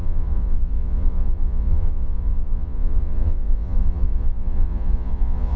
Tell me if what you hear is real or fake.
fake